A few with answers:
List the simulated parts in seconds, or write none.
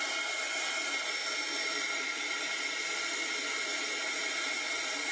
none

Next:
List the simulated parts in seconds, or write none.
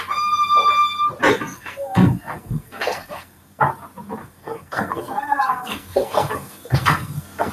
1.3-3.6 (codec, SNAC); 4.2-7.5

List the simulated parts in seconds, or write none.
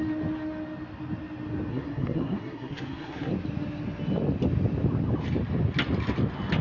1.7-3.3 (codec, SNAC)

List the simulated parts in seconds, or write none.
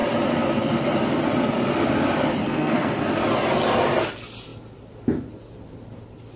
2.4-3.0 (codec, SNAC)